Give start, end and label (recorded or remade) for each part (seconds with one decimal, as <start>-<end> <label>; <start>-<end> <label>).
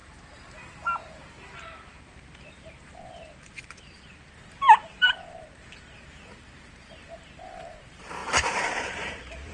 0.0-2.0 recorded; 2.0-9.5 remade